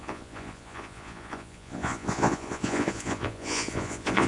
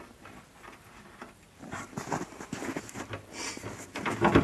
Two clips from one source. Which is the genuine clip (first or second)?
second